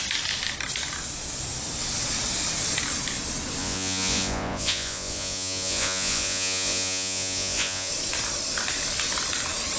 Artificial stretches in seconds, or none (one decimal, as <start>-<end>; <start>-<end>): 3.6-7.9